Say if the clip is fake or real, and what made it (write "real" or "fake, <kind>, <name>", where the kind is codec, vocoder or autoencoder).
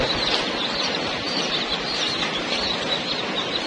real